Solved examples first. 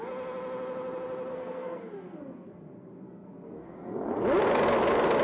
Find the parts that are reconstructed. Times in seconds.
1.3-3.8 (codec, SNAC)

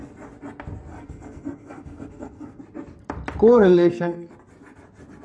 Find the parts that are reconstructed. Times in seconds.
0.9-2.6 (codec, SNAC); 3.5-4.3

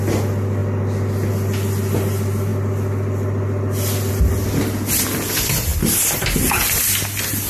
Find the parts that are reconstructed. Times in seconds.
none

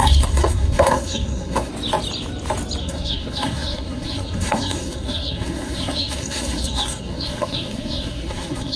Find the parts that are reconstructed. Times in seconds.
0.0-1.7 (codec, SNAC); 2.8-8.8